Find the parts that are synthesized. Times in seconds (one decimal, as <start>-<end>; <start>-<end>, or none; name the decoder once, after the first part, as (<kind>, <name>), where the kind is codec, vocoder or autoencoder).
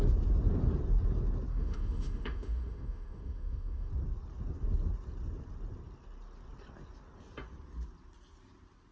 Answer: 1.5-3.9 (autoencoder, DAC-VAE)